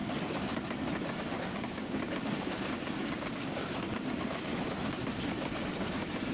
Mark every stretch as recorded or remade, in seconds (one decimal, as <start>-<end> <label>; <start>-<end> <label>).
0.0-1.4 recorded; 1.4-4.5 remade; 4.5-6.3 recorded